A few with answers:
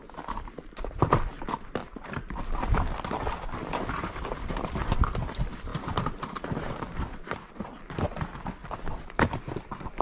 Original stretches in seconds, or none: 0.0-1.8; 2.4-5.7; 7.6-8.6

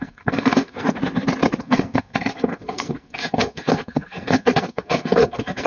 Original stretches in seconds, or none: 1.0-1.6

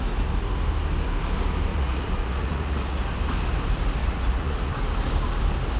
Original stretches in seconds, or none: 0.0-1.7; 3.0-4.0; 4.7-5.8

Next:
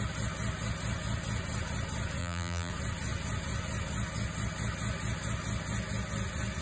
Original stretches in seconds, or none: 0.0-2.2; 2.7-6.6

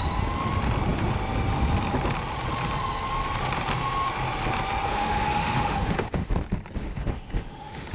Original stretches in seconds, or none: 0.0-4.9; 6.3-6.8